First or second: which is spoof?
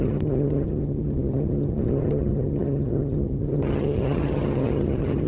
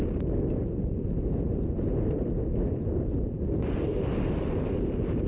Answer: first